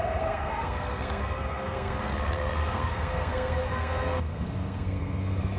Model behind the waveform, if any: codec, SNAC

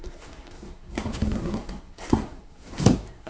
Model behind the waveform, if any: codec, SNAC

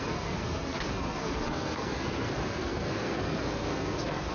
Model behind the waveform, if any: codec, SNAC